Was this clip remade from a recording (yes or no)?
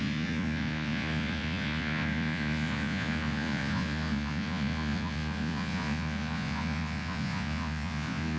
yes